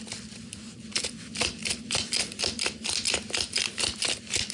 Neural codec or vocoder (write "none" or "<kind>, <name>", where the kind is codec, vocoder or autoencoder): none